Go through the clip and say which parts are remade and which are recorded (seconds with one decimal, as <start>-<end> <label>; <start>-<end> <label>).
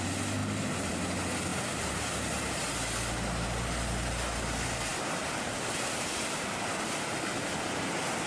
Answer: 0.0-1.5 recorded; 1.5-2.5 remade; 2.5-4.9 recorded; 4.9-6.6 remade; 6.6-8.3 recorded